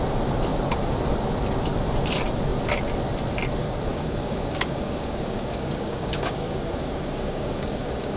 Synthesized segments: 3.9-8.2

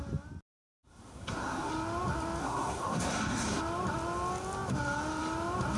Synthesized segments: 0.5-1.7; 2.4-3.6

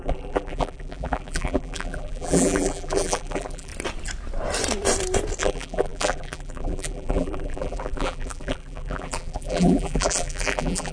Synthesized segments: 0.0-3.7; 5.4-10.9